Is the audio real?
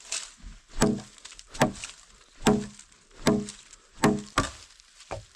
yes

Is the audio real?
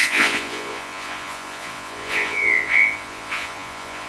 no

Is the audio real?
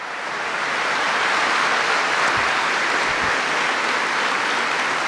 yes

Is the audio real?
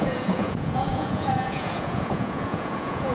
no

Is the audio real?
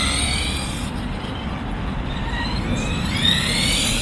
yes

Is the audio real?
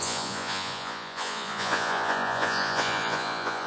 no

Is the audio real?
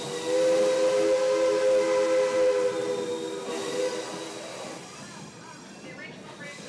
yes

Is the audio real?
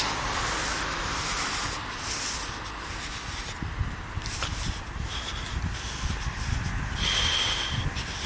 yes